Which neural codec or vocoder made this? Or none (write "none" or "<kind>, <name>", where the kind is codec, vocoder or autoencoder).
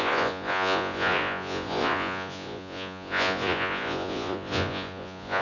vocoder, Vocos